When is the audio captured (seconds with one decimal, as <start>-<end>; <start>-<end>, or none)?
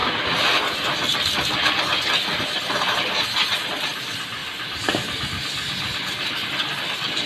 0.6-7.3